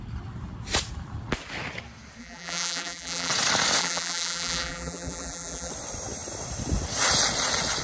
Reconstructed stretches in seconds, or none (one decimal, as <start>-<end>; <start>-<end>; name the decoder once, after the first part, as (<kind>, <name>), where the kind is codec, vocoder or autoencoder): 2.2-3.3 (vocoder, BigVGAN v2); 3.8-5.7